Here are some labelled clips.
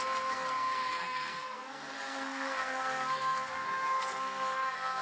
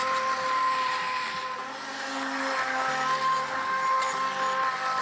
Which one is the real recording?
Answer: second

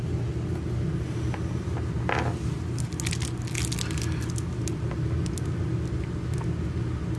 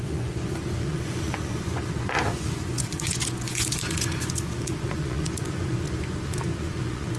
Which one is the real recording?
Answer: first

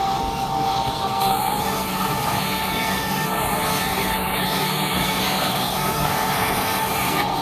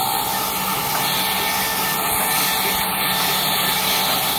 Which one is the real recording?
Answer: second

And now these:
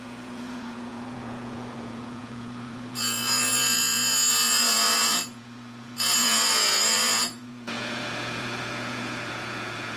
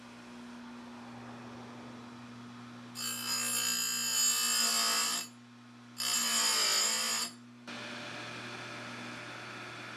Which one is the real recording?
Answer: second